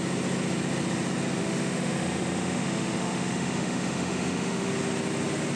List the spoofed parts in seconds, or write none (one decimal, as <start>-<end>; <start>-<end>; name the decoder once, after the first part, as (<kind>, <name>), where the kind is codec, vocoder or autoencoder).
1.4-4.7 (autoencoder, DAC-VAE)